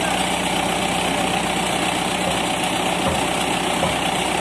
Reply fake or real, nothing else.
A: real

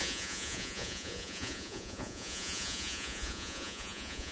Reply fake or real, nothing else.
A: fake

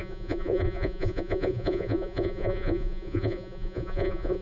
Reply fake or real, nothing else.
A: fake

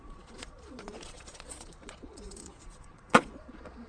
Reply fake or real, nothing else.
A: fake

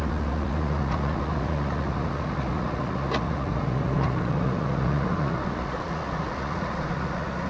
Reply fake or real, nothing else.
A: fake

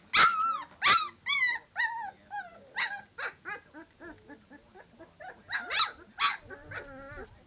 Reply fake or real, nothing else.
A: real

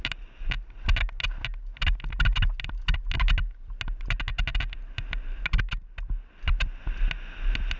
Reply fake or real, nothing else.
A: real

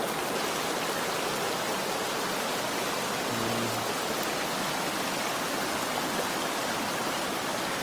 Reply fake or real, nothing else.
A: real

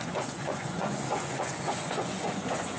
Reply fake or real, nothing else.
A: fake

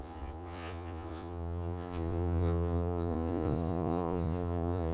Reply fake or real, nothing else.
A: fake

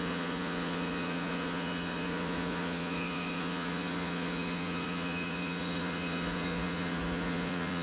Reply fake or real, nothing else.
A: fake